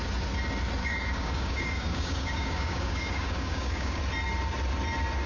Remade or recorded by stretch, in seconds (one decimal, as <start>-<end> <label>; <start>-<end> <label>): 0.0-0.8 recorded; 0.8-4.0 remade; 4.0-5.3 recorded